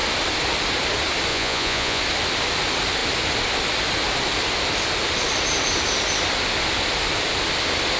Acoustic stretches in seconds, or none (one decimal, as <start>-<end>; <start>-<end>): 0.0-1.3; 2.0-8.0

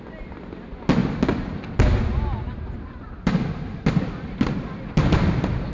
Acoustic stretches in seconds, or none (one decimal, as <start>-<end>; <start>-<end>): 0.0-5.7

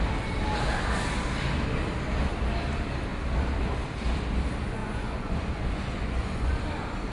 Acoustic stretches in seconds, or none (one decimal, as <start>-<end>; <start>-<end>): 0.0-4.8; 6.5-7.1

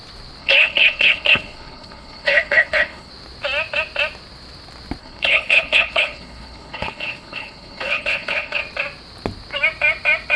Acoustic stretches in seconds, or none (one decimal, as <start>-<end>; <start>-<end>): 0.0-0.4; 3.1-5.0; 8.6-10.4

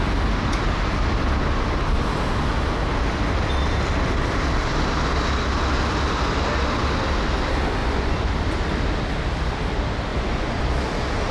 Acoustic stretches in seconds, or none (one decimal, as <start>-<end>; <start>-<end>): 0.0-7.8; 8.3-10.1; 10.6-11.3

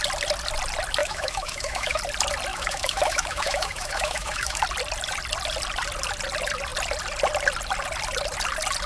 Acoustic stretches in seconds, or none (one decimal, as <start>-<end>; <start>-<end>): 0.0-1.0; 2.0-2.5; 4.6-8.9